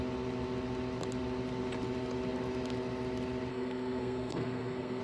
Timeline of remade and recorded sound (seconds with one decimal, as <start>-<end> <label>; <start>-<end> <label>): 0.0-3.5 recorded; 3.5-5.0 remade